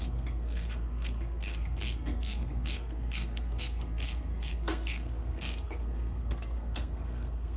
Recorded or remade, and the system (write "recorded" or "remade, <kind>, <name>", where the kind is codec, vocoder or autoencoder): remade, codec, SNAC